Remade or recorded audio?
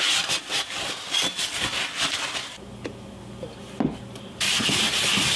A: recorded